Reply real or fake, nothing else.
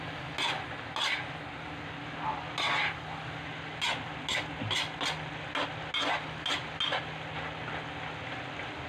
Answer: real